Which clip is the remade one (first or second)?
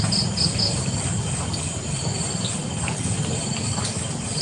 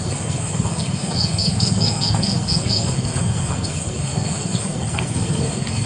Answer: second